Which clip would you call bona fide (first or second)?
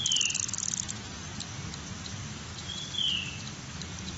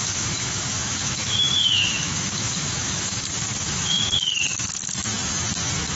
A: first